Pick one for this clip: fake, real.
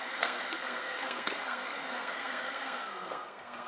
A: fake